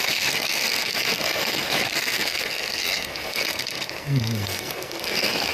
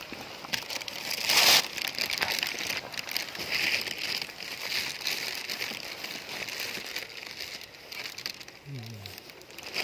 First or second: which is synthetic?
first